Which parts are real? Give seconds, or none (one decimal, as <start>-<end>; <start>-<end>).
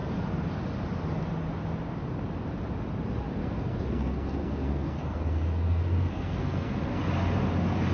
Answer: 0.0-3.4; 7.0-7.9